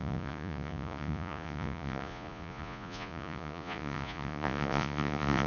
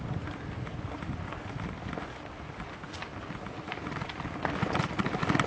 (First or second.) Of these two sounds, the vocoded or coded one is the first